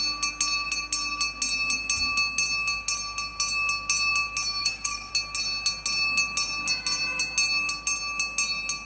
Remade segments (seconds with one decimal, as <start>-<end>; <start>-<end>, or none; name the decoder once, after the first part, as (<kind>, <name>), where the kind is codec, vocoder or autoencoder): 4.6-5.1 (codec, DAC)